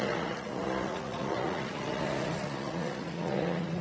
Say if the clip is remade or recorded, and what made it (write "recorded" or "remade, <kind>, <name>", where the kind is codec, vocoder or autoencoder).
remade, vocoder, Vocos